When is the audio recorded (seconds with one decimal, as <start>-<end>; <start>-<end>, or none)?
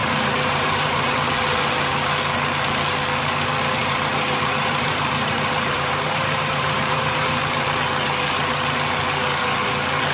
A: 1.1-3.8; 7.3-10.1